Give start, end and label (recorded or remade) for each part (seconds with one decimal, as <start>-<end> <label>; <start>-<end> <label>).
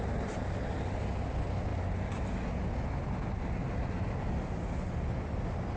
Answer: 0.0-5.8 recorded